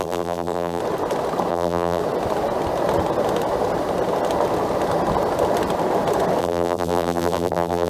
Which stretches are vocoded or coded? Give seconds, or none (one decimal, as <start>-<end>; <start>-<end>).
0.0-0.8; 1.5-2.0; 6.4-7.9

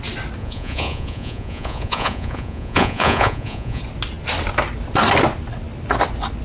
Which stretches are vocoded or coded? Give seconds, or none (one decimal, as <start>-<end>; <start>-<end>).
0.4-3.8